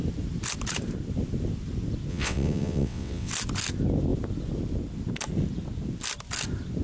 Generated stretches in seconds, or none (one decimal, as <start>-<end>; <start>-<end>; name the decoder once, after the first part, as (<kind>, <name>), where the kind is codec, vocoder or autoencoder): 2.1-3.3 (vocoder, WaveNeXt)